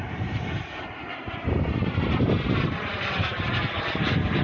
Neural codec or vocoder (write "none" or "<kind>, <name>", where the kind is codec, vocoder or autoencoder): vocoder, BigVGAN v2